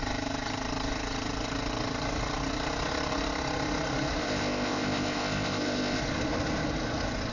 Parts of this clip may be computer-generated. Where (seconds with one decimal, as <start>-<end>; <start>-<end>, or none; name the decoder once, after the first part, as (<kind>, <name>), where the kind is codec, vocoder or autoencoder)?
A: 4.2-6.0 (codec, ZipCodec)